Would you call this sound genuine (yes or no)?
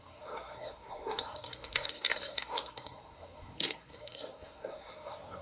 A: no